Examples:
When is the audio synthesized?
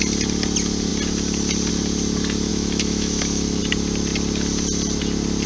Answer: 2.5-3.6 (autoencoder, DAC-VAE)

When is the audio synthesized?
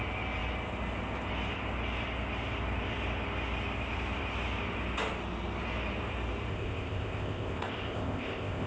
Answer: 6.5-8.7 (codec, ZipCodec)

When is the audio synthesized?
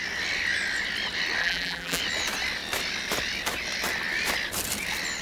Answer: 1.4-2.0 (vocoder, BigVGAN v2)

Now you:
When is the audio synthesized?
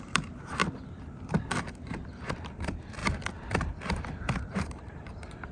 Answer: 0.0-0.6 (vocoder, BigVGAN v2); 1.6-3.0; 4.4-5.5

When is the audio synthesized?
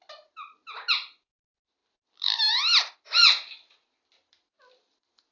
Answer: none